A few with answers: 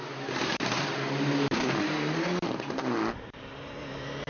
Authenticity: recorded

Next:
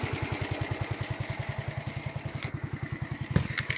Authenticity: recorded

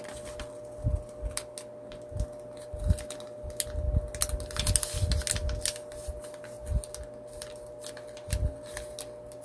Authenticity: recorded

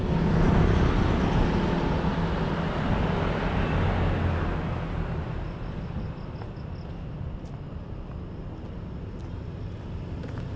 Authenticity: recorded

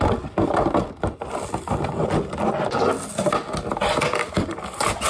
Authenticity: recorded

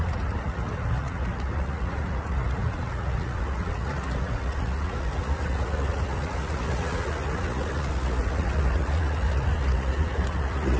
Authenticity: remade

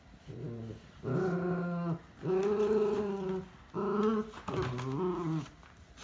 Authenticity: recorded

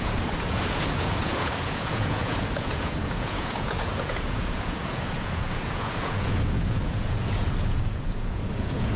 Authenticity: remade